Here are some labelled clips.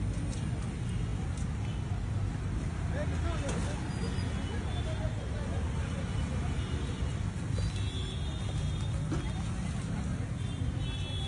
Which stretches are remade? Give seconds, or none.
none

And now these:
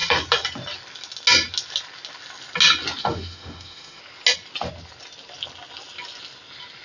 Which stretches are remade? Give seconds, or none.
3.0-4.0

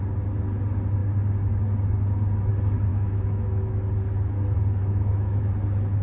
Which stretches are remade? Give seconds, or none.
2.9-3.7; 4.8-5.4

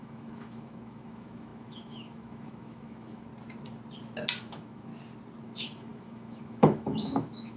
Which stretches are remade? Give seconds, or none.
0.0-3.3; 4.4-4.9; 5.4-7.6

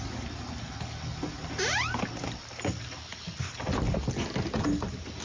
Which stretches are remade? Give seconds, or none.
none

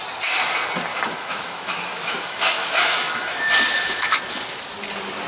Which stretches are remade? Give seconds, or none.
0.9-4.1

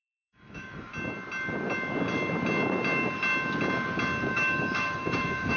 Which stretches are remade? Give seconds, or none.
0.0-0.9; 4.3-5.6